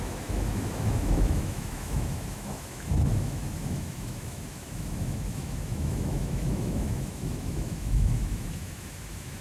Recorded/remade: remade